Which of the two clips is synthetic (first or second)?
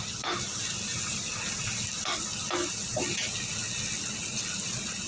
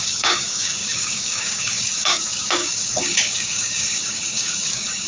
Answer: second